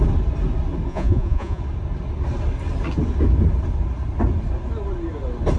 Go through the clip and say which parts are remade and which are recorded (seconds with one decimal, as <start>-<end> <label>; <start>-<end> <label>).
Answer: 0.0-0.9 recorded; 0.9-1.6 remade; 1.6-5.6 recorded